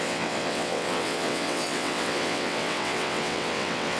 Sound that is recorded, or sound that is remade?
remade